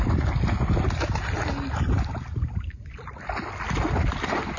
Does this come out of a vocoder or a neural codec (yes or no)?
no